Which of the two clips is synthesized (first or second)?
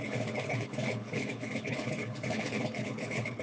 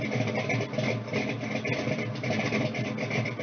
first